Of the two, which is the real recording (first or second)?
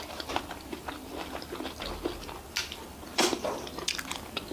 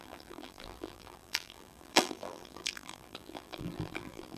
first